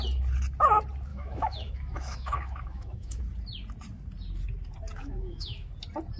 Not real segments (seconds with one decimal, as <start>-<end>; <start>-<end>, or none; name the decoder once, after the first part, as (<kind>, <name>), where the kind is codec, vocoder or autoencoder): 1.1-3.2 (autoencoder, DAC-VAE); 5.0-5.7